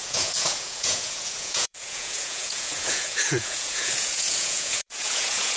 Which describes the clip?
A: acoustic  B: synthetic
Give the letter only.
B